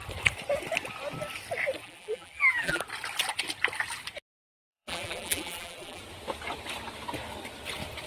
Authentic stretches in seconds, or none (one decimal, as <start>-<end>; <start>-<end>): 0.0-1.8; 2.8-4.7; 6.0-8.1